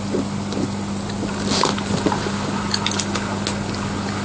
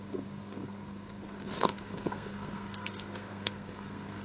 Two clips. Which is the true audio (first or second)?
first